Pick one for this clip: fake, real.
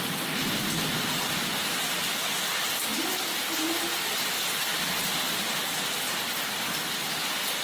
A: real